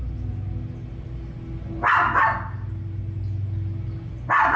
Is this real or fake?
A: real